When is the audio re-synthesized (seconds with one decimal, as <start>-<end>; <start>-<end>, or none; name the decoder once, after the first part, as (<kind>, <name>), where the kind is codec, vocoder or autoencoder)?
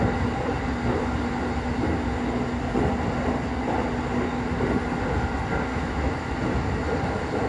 5.7-6.3 (autoencoder, DAC-VAE)